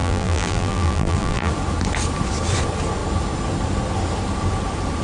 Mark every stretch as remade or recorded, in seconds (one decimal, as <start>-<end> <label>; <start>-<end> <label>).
0.0-1.5 remade; 1.5-5.0 recorded